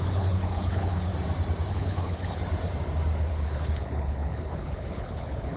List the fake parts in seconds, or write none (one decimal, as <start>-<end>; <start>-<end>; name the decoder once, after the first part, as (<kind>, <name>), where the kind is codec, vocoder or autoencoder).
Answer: 0.0-1.1 (codec, HILCodec); 1.7-2.4; 3.3-5.6